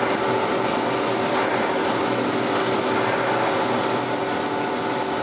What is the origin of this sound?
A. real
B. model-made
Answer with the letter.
A